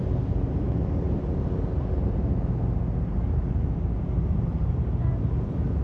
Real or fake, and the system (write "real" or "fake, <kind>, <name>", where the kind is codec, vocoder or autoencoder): fake, vocoder, BigVGAN v2